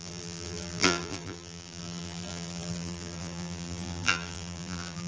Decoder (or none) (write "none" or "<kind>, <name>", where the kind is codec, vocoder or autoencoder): vocoder, BigVGAN v2